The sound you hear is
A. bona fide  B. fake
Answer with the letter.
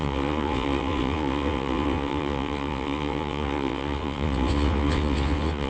B